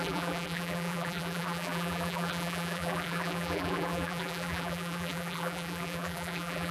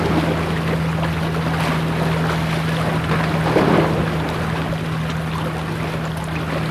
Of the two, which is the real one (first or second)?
second